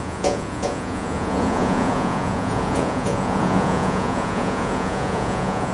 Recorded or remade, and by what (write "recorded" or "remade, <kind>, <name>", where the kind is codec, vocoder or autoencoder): remade, vocoder, Vocos